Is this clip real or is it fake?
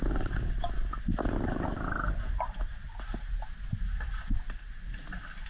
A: real